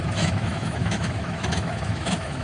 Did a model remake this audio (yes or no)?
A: yes